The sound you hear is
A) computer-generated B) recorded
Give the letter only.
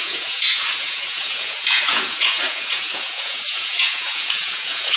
A